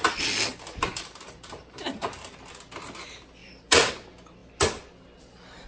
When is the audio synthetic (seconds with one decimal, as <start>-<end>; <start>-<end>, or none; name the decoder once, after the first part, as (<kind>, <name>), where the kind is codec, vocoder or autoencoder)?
0.5-2.5 (vocoder, BigVGAN v2); 3.4-3.9